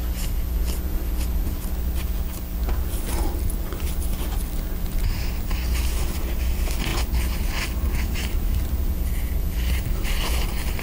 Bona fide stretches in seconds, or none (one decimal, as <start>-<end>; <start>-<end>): 0.0-10.8